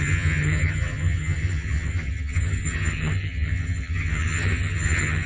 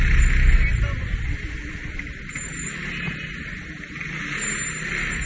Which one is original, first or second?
second